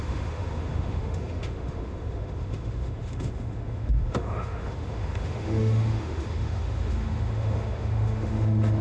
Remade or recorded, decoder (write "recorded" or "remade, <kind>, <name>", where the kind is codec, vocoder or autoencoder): remade, autoencoder, DAC-VAE